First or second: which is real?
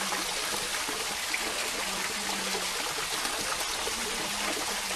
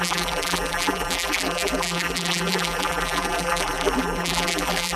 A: first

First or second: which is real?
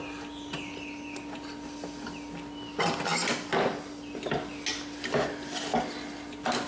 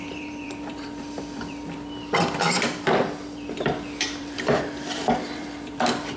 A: first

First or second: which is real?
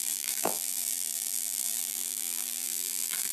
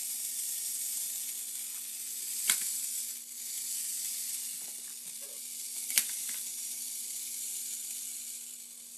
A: second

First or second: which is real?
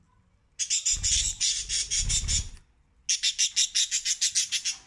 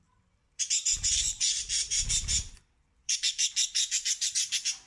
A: first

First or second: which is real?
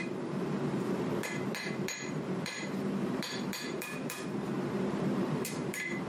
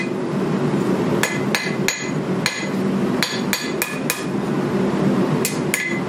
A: second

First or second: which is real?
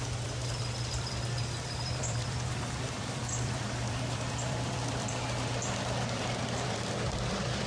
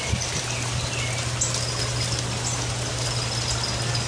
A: second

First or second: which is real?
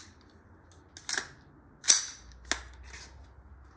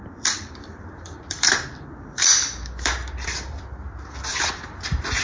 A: first